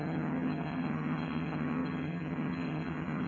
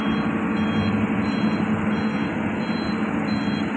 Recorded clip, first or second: second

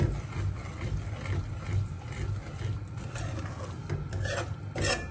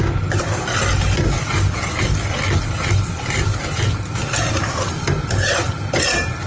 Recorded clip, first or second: first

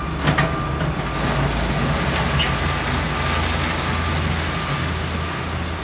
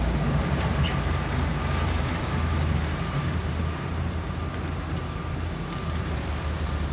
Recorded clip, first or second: first